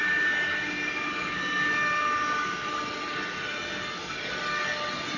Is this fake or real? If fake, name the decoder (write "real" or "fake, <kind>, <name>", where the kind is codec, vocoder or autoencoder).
real